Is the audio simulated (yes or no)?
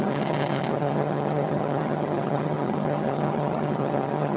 yes